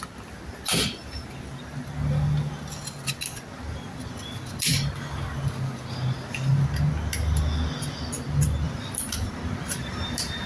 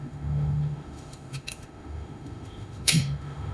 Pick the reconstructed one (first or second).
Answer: second